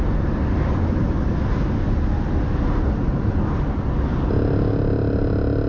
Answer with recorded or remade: recorded